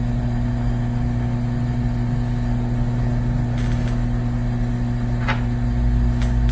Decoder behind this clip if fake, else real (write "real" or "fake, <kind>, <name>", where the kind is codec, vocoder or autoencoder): real